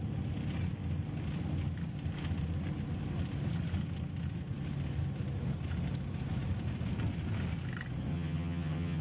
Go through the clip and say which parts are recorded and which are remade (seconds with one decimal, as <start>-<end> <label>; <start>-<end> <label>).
0.0-8.1 recorded; 8.1-9.0 remade